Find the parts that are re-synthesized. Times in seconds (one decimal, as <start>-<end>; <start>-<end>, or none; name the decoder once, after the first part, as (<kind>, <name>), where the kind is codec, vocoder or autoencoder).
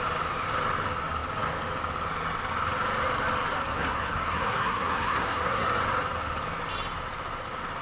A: 3.7-5.8 (codec, SNAC)